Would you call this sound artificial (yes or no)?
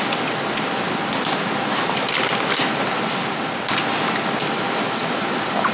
no